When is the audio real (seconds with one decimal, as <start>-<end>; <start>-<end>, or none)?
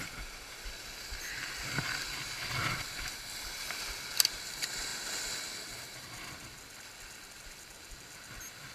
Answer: 0.0-8.7